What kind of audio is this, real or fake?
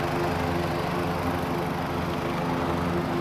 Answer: real